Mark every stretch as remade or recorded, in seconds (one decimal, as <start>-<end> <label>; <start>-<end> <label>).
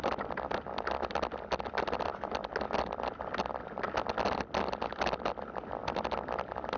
0.0-6.8 recorded